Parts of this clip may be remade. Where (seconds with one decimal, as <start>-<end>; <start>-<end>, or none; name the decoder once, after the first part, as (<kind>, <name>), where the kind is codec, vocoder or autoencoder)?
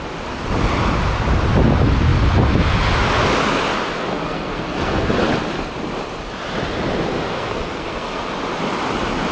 4.1-5.1 (codec, SNAC); 7.1-8.2